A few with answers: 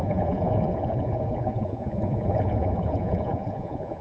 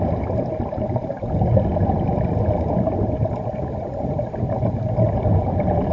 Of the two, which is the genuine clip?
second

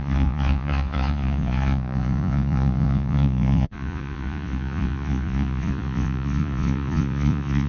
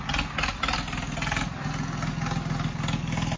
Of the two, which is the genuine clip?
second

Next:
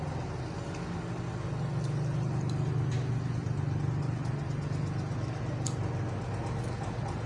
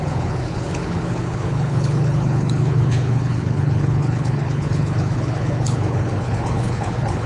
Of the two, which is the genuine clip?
first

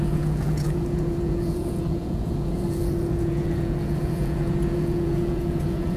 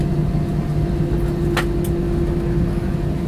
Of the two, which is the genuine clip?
second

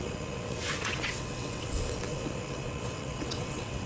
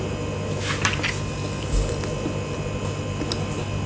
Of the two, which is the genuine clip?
second